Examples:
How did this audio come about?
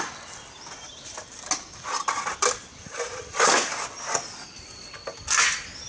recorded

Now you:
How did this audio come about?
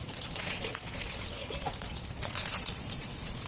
remade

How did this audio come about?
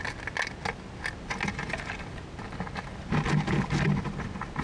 recorded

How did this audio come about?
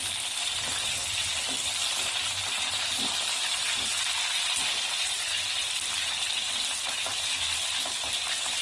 recorded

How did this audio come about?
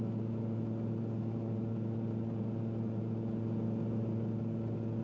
recorded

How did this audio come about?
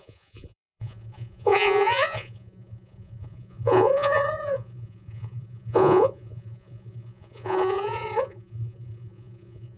remade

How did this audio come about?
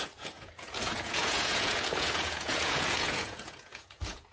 remade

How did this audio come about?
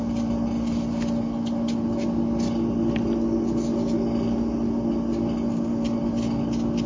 recorded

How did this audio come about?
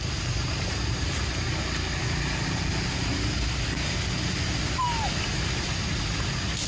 recorded